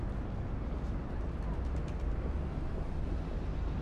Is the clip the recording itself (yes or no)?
yes